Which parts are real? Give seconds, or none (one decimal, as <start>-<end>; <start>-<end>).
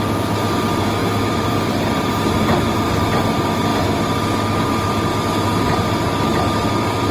none